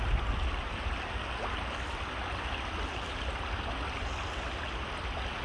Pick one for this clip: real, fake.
real